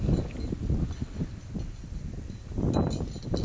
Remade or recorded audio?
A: recorded